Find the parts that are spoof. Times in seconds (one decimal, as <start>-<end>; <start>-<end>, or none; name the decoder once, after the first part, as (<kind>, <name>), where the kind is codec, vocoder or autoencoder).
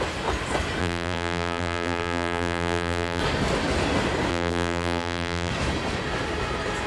0.8-3.2 (vocoder, BigVGAN v2); 4.3-5.5